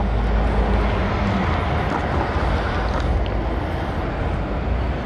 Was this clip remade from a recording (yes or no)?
no